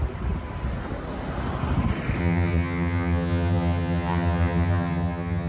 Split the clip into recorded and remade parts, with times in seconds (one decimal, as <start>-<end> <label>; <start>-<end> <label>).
0.0-2.2 recorded; 2.2-5.5 remade